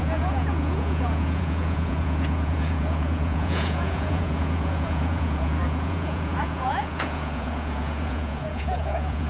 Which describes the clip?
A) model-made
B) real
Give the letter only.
A